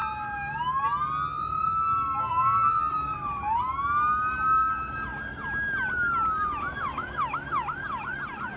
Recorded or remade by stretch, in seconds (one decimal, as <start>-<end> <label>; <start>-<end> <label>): 0.0-2.2 recorded; 2.2-2.8 remade; 2.8-8.6 recorded